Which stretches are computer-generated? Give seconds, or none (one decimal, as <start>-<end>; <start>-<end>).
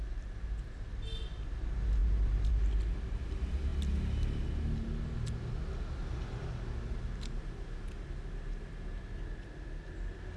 none